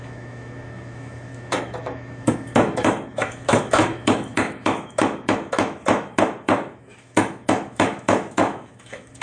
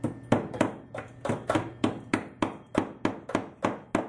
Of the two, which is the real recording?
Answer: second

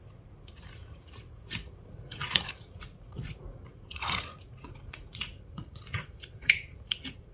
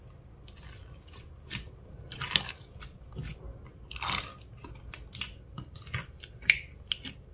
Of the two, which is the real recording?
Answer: second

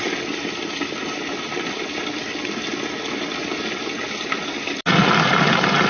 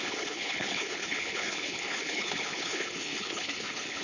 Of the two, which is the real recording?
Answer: first